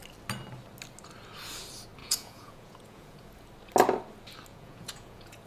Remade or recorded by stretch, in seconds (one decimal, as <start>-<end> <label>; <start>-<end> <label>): 0.0-2.0 recorded; 2.0-3.3 remade; 3.3-4.5 recorded; 4.5-5.5 remade